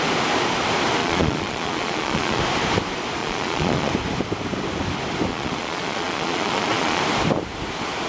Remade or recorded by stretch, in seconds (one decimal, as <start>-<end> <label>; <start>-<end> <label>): 0.0-1.0 recorded; 1.0-2.4 remade; 2.4-3.2 recorded; 3.2-3.9 remade; 3.9-5.3 recorded; 5.3-7.0 remade; 7.0-8.1 recorded